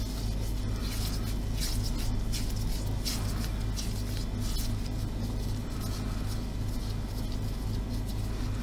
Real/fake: real